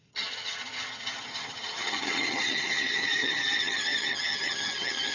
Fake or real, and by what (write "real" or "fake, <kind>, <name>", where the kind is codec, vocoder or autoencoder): fake, vocoder, HiFi-GAN